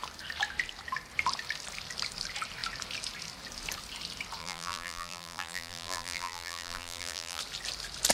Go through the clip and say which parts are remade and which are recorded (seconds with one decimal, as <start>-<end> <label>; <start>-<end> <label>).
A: 0.0-4.4 recorded; 4.4-7.4 remade; 7.4-8.1 recorded